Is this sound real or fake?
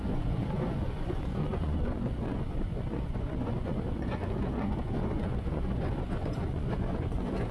fake